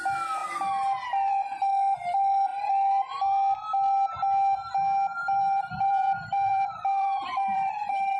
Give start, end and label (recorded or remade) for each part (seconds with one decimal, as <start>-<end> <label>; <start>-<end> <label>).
0.0-5.2 recorded; 5.2-8.2 remade